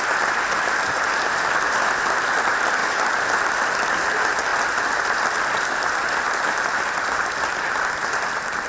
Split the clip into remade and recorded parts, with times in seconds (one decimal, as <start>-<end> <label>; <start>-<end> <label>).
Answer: 0.0-8.7 recorded